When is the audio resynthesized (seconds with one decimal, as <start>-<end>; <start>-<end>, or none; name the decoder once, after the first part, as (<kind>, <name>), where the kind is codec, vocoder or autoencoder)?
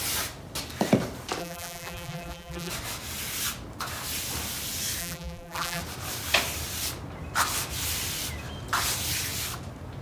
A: 1.4-2.7 (vocoder, BigVGAN v2); 5.0-5.8